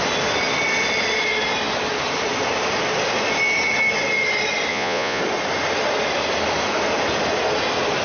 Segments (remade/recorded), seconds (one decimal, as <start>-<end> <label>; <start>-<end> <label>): 0.0-4.7 recorded; 4.7-5.2 remade; 5.2-8.0 recorded